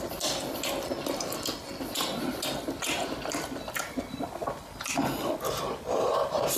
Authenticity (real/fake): real